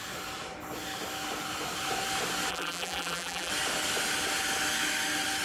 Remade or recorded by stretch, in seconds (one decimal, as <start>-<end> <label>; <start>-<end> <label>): 0.0-2.5 recorded; 2.5-3.5 remade; 3.5-5.4 recorded